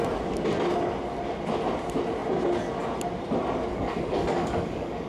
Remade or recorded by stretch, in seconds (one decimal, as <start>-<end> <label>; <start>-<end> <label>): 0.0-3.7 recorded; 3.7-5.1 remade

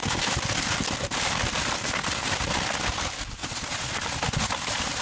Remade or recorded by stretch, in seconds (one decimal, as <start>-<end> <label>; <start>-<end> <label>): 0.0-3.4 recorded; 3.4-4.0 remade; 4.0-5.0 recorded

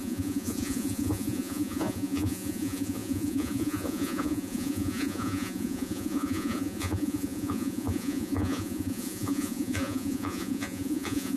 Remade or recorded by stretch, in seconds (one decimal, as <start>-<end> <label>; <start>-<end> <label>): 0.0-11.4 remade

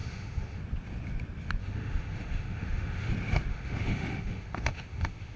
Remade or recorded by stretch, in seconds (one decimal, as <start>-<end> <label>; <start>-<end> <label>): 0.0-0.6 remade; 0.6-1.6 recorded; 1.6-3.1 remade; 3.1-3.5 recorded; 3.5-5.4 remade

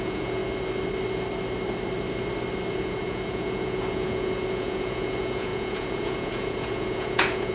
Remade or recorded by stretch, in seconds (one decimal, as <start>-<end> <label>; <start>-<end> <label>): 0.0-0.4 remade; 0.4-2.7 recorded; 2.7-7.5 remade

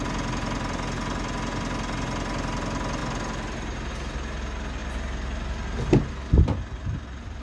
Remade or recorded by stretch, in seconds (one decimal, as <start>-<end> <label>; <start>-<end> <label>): 0.0-7.4 recorded

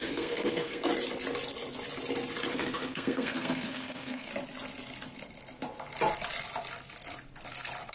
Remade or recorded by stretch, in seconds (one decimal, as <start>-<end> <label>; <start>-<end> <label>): 0.0-0.9 remade; 0.9-2.5 recorded; 2.5-4.3 remade; 4.3-7.9 recorded

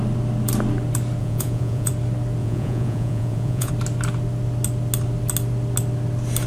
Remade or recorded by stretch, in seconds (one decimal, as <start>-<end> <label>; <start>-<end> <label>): 0.0-1.2 recorded; 1.2-1.9 remade; 1.9-2.4 recorded; 2.4-3.7 remade; 3.7-6.5 recorded